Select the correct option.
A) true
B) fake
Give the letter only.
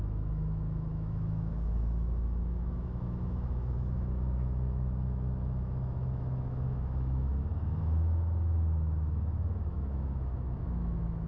B